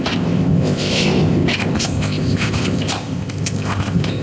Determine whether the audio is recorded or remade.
remade